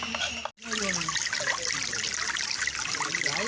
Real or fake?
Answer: real